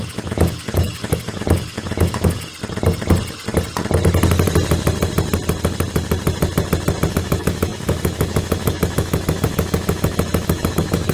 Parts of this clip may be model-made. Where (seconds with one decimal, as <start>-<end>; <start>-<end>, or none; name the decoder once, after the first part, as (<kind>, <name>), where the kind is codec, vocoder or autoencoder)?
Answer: 0.0-2.5 (autoencoder, DAC-VAE); 7.1-11.1